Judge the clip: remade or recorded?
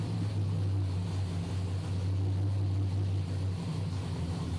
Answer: recorded